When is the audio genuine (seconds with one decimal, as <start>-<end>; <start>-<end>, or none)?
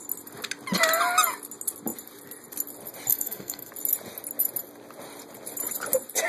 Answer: 0.0-3.1; 3.7-6.3